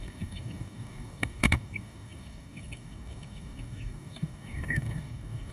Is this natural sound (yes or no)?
no